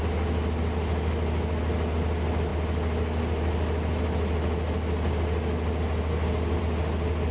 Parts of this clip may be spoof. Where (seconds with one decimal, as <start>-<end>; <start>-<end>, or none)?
none